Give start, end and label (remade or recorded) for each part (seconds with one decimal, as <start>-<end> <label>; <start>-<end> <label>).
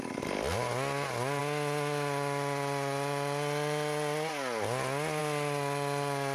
0.0-6.3 recorded